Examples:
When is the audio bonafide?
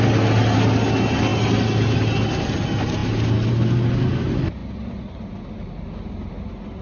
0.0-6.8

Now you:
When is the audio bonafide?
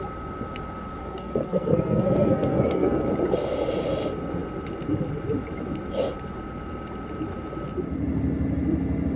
0.0-1.0; 3.1-9.2